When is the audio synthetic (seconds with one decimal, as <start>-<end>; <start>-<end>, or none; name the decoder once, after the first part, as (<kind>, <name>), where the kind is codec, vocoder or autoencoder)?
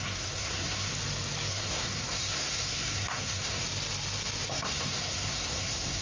0.0-0.9 (codec, SNAC); 1.5-3.6; 4.5-6.0